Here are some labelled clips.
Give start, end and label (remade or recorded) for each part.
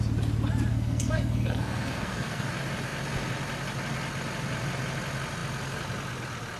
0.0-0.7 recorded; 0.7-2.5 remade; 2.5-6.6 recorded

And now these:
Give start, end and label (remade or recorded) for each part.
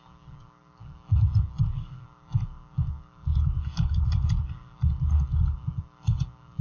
0.0-6.6 recorded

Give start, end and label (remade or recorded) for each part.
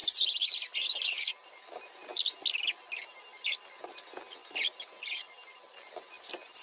0.0-6.6 recorded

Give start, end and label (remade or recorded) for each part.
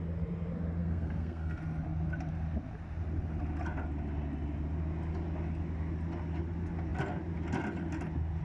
0.0-0.8 recorded; 0.8-1.6 remade; 1.6-8.4 recorded